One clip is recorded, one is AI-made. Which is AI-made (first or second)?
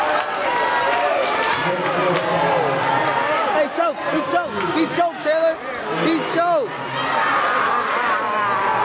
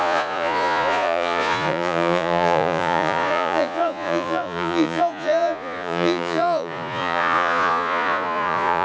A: second